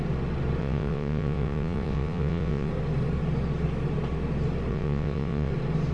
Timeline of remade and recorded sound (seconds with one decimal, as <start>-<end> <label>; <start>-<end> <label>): 0.0-0.6 recorded; 0.6-2.7 remade; 2.7-4.7 recorded; 4.7-5.5 remade; 5.5-5.9 recorded